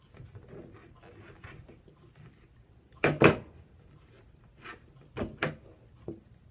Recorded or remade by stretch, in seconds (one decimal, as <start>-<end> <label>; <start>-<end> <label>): 0.0-6.5 recorded